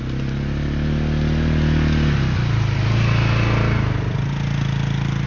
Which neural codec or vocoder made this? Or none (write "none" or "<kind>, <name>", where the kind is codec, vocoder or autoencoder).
none